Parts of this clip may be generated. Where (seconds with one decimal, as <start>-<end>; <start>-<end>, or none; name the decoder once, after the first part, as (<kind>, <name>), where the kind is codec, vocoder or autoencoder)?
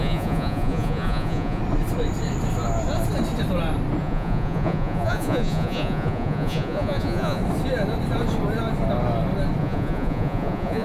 0.0-1.6 (vocoder, Vocos); 4.0-7.4; 9.6-10.8